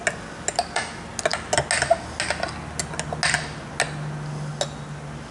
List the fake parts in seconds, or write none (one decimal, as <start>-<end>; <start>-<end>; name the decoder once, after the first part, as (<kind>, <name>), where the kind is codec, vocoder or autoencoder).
none

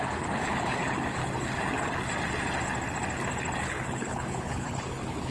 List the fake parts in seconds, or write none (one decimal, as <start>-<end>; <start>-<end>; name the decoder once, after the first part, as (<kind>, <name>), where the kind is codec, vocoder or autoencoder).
0.0-1.2 (codec, HILCodec); 3.6-5.3

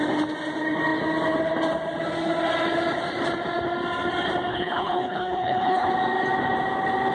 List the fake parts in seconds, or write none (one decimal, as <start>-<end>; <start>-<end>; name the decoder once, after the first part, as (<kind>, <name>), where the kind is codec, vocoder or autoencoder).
4.5-5.9 (codec, HILCodec)

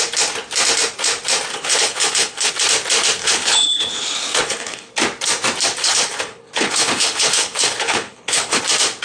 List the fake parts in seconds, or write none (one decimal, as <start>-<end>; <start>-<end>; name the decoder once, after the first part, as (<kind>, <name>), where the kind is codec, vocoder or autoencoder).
1.5-2.5 (codec, HILCodec); 3.2-4.9; 5.8-8.6

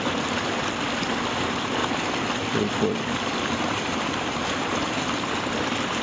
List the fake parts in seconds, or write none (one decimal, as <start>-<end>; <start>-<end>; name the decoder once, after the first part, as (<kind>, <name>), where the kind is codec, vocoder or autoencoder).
none